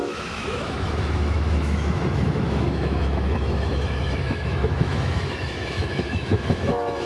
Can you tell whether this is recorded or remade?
remade